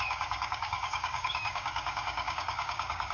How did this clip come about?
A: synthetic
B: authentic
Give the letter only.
A